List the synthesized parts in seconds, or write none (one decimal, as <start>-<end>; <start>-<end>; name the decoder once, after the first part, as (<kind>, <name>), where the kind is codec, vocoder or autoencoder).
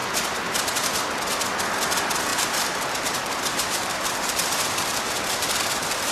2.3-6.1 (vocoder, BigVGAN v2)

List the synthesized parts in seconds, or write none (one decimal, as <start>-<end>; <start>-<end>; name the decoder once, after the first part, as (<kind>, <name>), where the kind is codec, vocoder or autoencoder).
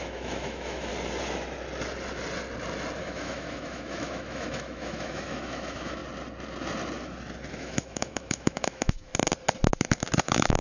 0.0-0.9 (autoencoder, DAC-VAE); 3.0-6.0; 7.5-9.1; 10.2-10.6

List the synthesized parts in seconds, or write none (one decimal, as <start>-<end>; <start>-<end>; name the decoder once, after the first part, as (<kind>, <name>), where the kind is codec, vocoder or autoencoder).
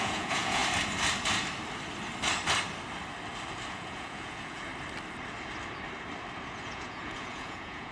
0.0-0.6 (vocoder, Vocos); 3.7-4.7; 6.6-7.9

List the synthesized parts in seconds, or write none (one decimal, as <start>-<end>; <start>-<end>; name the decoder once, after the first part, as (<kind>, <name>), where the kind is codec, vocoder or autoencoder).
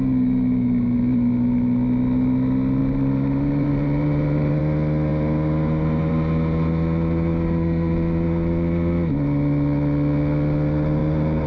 2.8-4.6 (vocoder, BigVGAN v2); 11.0-11.5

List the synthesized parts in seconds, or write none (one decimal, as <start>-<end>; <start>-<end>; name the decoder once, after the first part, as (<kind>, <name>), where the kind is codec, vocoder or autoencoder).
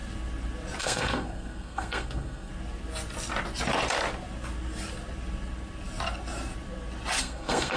0.8-2.5 (codec, SNAC); 7.2-7.8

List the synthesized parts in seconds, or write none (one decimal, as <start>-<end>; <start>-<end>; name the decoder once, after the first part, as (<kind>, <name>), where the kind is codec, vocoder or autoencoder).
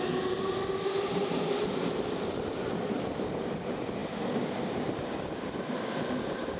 none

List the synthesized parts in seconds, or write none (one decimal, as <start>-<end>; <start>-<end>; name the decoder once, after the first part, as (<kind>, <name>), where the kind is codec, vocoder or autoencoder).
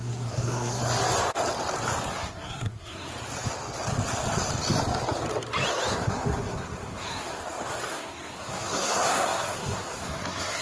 0.0-0.8 (codec, SNAC); 2.1-3.1; 5.9-7.4; 7.9-10.6